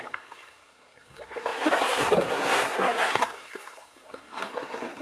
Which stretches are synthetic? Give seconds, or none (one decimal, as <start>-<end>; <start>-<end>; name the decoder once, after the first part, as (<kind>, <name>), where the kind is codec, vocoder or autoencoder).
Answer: 0.0-5.0 (codec, SNAC)